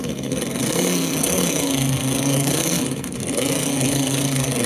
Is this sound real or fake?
fake